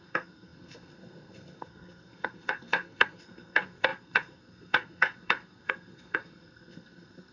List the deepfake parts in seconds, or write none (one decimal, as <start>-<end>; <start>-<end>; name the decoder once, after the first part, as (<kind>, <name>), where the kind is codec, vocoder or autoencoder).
0.0-7.3 (codec, SNAC)